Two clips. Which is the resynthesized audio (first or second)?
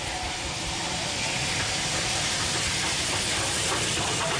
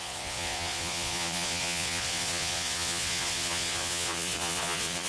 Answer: second